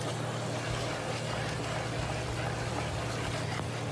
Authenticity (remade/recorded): recorded